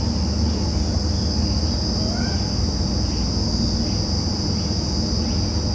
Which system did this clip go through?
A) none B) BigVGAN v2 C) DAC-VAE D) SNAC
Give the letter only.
A